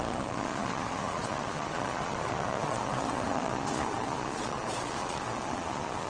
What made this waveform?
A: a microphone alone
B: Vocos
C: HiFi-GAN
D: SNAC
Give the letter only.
B